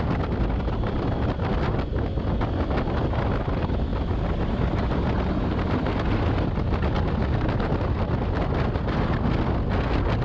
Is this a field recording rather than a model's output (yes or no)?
yes